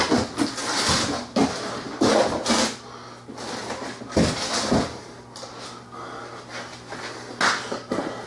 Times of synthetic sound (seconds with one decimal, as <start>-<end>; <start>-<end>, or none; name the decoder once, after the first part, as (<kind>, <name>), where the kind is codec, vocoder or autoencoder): none